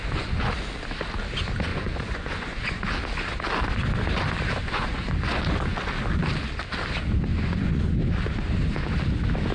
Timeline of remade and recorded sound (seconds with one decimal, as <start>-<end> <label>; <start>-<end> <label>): 0.0-0.5 remade; 0.5-1.7 recorded; 1.7-2.8 remade; 2.8-4.6 recorded; 4.6-5.8 remade; 5.8-7.3 recorded; 7.3-7.9 remade; 7.9-9.5 recorded